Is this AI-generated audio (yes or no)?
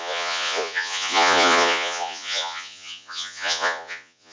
yes